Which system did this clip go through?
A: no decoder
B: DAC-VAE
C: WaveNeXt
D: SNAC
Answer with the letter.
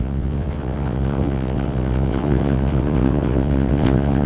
C